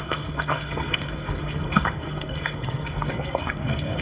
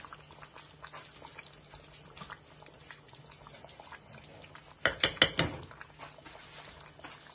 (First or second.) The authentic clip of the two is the second